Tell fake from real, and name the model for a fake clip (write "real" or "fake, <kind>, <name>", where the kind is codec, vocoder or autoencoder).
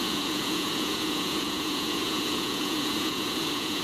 fake, vocoder, Vocos